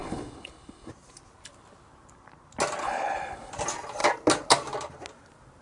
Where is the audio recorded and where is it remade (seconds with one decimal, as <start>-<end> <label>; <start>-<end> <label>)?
0.0-0.9 remade; 0.9-2.8 recorded; 2.8-3.5 remade; 3.5-5.6 recorded